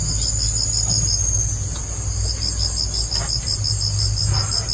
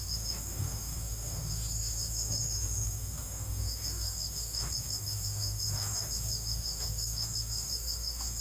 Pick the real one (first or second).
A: first